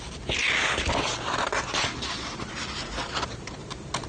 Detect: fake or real real